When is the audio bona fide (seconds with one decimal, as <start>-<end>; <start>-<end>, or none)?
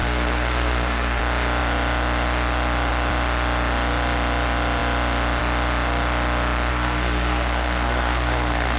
1.2-6.7